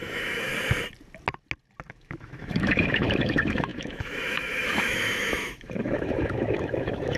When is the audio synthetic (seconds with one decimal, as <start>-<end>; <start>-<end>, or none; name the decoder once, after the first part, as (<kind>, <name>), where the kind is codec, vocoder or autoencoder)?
0.0-0.5 (autoencoder, DAC-VAE); 1.9-7.2